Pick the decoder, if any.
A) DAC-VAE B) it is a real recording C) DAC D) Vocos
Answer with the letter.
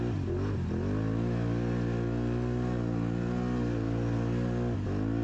B